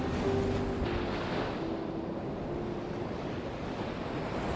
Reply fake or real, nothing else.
real